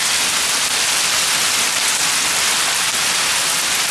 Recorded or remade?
recorded